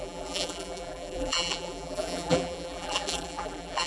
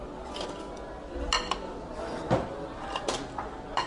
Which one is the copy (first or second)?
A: first